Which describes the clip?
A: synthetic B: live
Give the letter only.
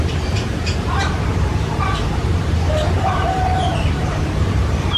A